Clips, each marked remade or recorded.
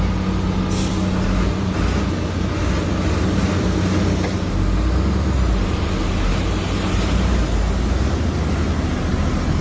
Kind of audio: recorded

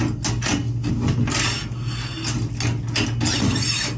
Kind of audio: recorded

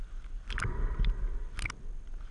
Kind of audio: recorded